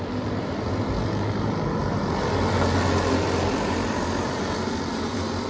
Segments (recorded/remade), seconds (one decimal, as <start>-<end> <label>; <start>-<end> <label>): 0.0-1.8 remade; 1.8-5.1 recorded; 5.1-5.5 remade